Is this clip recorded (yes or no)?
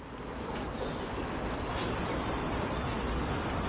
yes